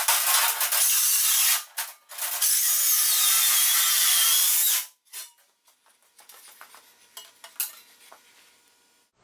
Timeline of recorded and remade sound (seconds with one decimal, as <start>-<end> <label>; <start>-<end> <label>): 0.0-4.0 recorded; 4.0-6.8 remade; 6.8-9.2 recorded